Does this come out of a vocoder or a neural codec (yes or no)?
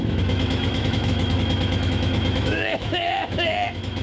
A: yes